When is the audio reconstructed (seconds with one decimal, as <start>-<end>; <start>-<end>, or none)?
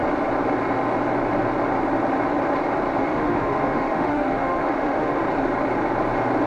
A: 3.0-5.2